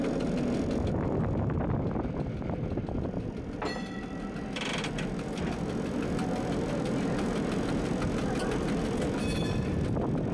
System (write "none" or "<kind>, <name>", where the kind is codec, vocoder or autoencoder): none